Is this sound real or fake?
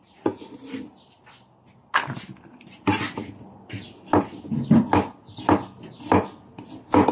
real